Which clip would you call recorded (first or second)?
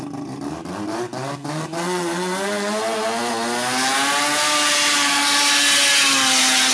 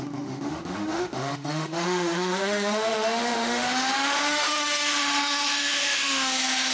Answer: first